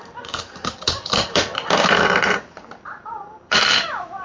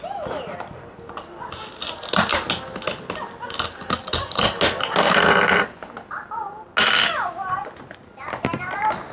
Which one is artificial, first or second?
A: first